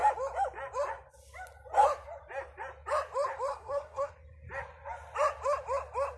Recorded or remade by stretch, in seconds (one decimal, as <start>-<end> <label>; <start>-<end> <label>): 0.0-3.5 recorded; 3.5-4.1 remade; 4.1-6.2 recorded